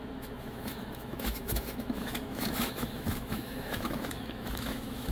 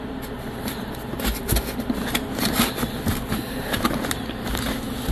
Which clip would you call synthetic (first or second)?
first